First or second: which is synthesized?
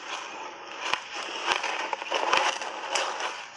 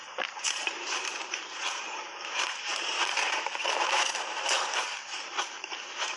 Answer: second